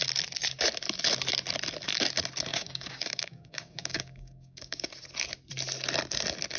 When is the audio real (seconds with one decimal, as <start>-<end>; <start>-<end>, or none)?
0.0-2.5; 4.9-6.6